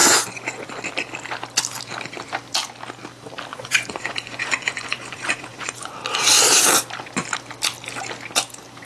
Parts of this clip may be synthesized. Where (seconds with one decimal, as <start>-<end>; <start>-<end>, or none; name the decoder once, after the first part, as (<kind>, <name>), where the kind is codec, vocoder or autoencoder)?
0.0-0.8 (vocoder, Vocos); 3.5-5.9